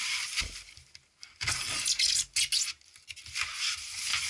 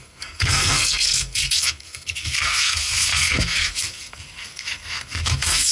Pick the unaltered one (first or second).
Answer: first